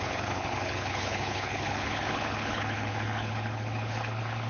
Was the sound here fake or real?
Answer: fake